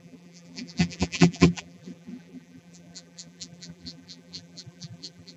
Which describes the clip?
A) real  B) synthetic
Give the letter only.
B